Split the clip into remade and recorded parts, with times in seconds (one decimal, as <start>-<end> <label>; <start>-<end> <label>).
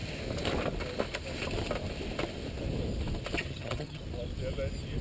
0.0-3.4 recorded; 3.4-4.0 remade; 4.0-5.0 recorded